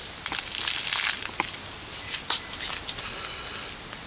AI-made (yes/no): no